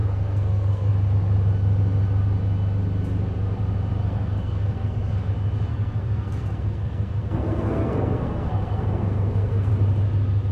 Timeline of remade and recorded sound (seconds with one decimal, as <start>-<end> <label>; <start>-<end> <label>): 0.0-0.9 remade; 0.9-4.0 recorded; 4.0-5.3 remade; 5.3-5.7 recorded; 5.7-9.7 remade; 9.7-10.5 recorded